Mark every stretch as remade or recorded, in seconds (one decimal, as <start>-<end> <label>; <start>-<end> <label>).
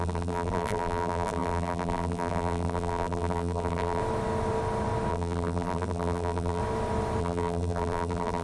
0.0-4.0 remade; 4.0-5.1 recorded; 5.1-6.6 remade; 6.6-7.2 recorded; 7.2-8.4 remade